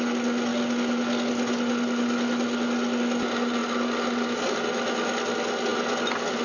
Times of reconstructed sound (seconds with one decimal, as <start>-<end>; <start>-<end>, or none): none